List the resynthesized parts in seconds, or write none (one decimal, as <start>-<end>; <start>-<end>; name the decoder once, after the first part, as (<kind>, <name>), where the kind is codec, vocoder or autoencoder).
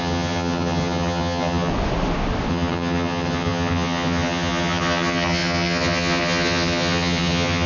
0.0-1.7 (vocoder, HiFi-GAN); 2.5-7.7